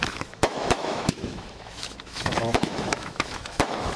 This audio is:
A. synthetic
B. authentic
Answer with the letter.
A